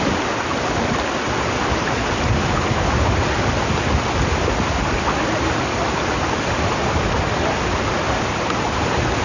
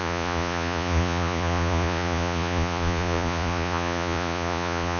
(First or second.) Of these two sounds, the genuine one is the first